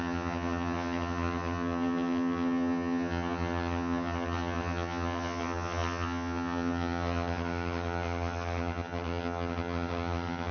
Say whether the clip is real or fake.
fake